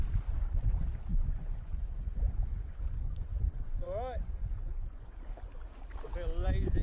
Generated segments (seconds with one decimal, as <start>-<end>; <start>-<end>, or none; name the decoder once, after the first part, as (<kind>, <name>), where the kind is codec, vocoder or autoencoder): 1.1-5.2 (vocoder, Vocos)